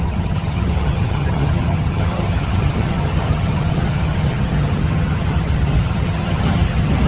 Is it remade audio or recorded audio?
remade